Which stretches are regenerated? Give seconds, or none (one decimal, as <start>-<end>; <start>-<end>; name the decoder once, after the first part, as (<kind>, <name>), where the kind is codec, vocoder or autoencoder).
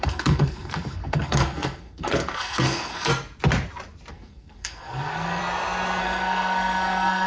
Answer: 0.0-3.1 (codec, SNAC); 4.1-5.4; 6.0-7.3